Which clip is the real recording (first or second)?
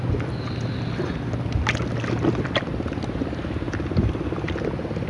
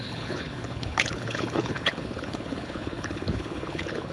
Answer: first